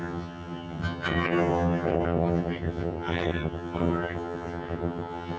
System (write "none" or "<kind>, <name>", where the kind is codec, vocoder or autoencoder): vocoder, HiFi-GAN